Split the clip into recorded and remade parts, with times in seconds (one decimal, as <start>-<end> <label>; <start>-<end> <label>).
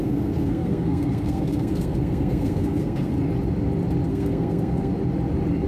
0.0-3.1 remade; 3.1-4.1 recorded; 4.1-4.9 remade; 4.9-5.7 recorded